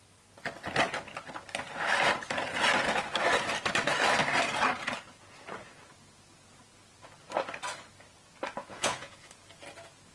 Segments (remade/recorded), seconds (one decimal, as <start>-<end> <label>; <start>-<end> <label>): 0.0-8.6 recorded; 8.6-9.3 remade; 9.3-10.1 recorded